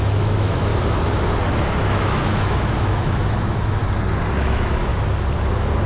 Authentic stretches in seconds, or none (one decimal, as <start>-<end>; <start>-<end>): 0.7-1.8; 3.8-4.3; 4.9-5.9